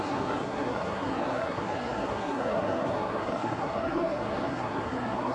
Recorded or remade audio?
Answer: remade